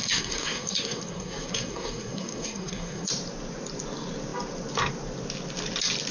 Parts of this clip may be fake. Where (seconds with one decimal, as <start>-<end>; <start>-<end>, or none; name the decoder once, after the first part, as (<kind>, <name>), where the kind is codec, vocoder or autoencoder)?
0.0-3.1 (codec, SNAC)